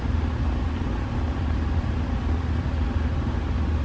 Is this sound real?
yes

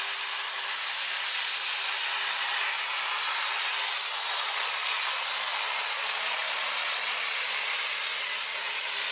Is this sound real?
yes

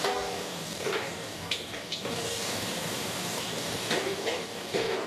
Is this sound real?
no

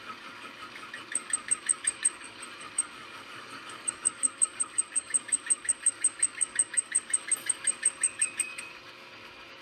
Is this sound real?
no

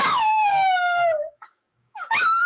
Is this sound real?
no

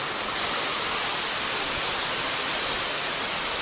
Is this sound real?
yes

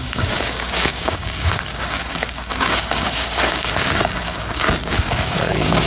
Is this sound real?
no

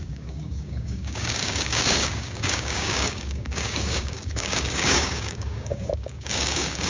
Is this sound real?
no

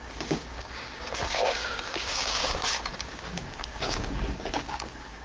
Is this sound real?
no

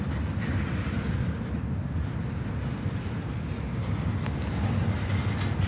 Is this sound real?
yes